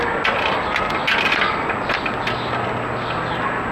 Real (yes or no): yes